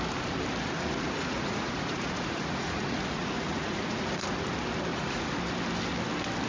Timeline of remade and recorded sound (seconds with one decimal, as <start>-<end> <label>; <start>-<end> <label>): 0.0-0.6 recorded; 0.6-4.5 remade; 4.5-4.9 recorded; 4.9-5.4 remade; 5.4-6.5 recorded